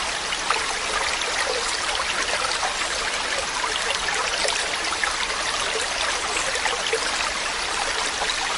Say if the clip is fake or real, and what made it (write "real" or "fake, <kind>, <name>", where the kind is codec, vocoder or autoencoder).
real